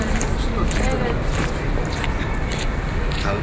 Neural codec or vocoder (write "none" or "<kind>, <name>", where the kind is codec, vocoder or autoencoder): none